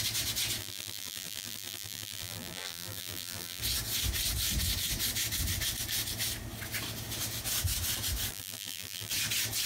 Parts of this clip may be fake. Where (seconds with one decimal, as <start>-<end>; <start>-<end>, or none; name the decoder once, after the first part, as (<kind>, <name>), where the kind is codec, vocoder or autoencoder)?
0.6-3.6 (vocoder, BigVGAN v2); 8.3-9.1